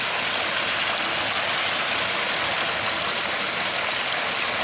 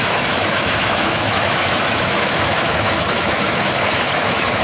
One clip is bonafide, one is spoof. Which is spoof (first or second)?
second